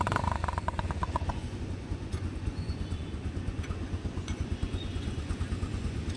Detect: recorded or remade remade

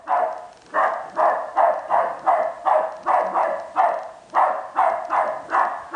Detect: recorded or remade recorded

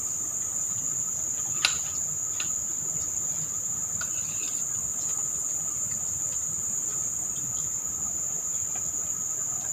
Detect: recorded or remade recorded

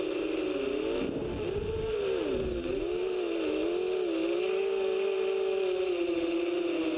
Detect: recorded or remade recorded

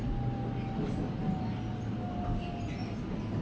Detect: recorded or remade recorded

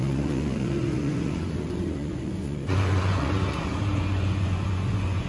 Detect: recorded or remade remade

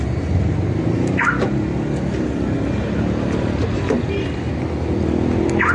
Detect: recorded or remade recorded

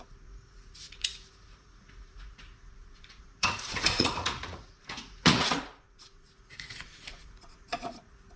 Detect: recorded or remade remade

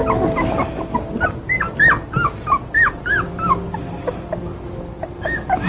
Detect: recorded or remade recorded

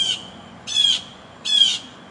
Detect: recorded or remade remade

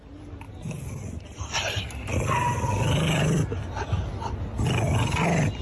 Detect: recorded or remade recorded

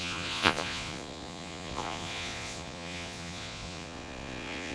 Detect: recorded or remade remade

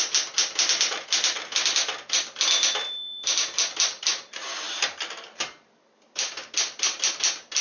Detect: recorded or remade recorded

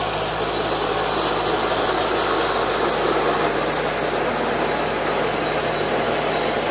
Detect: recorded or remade recorded